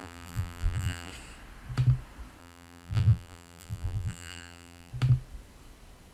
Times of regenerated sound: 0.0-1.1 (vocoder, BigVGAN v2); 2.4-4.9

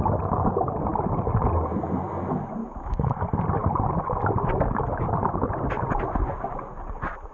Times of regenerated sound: 2.6-3.1 (autoencoder, DAC-VAE)

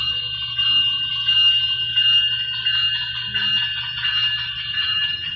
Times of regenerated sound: 4.7-5.4 (vocoder, HiFi-GAN)

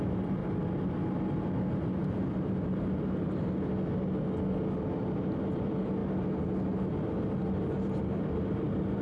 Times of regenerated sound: 0.0-0.4 (vocoder, BigVGAN v2); 5.6-6.0; 7.9-9.0

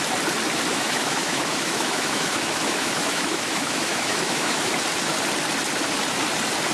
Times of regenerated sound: 0.7-4.7 (autoencoder, DAC-VAE)

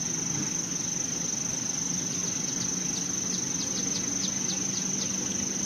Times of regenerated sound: none